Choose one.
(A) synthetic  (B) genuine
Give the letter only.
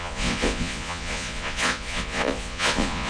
A